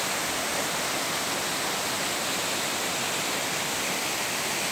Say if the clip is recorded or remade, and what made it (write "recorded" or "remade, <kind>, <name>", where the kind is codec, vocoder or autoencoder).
recorded